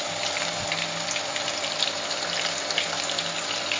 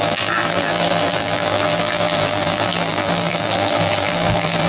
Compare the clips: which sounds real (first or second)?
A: first